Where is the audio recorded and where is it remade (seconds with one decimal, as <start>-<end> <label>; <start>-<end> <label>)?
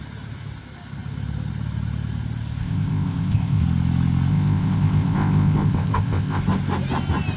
0.0-2.6 recorded; 2.6-3.6 remade; 3.6-4.3 recorded; 4.3-6.4 remade; 6.4-7.4 recorded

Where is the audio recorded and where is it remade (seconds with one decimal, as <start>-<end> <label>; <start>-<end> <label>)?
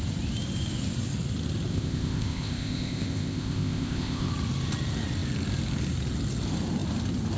0.0-1.7 recorded; 1.7-4.3 remade; 4.3-7.4 recorded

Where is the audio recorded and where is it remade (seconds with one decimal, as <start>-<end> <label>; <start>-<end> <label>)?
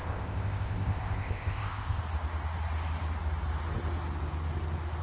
0.0-2.0 remade; 2.0-5.0 recorded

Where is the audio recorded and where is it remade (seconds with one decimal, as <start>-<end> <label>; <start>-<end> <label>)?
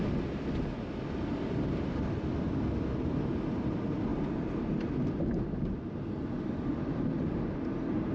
0.0-8.1 recorded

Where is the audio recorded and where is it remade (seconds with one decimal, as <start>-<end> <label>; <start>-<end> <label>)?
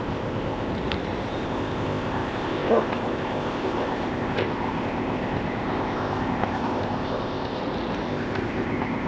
0.0-0.7 remade; 0.7-1.3 recorded; 1.3-7.6 remade; 7.6-8.1 recorded; 8.1-9.1 remade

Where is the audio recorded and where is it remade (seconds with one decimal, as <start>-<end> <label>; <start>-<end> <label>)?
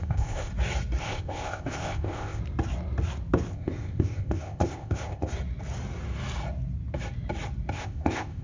0.0-0.5 remade; 0.5-1.0 recorded; 1.0-2.4 remade; 2.4-3.5 recorded; 3.5-5.3 remade; 5.3-7.7 recorded; 7.7-8.4 remade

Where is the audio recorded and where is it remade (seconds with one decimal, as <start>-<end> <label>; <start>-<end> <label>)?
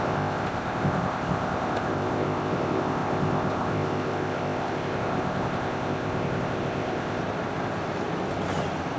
0.0-7.2 remade; 7.2-9.0 recorded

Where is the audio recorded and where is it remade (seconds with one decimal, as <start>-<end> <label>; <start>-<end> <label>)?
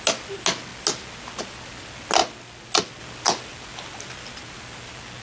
0.0-5.2 recorded